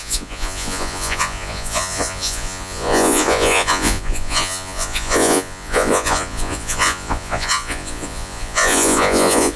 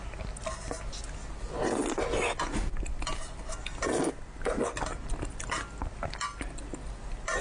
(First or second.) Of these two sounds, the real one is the second